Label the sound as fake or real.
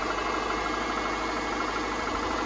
real